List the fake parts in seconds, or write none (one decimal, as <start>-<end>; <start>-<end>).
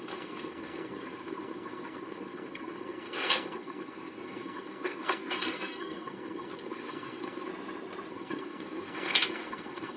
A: 0.0-7.5; 8.1-10.0